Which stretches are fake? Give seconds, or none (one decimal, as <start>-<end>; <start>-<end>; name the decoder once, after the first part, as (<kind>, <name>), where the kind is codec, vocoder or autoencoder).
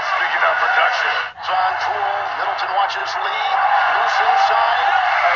0.5-1.7 (vocoder, Vocos); 3.0-4.7